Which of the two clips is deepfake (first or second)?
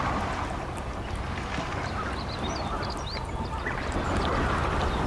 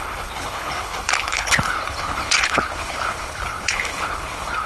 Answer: second